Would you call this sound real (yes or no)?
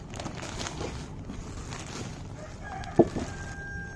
yes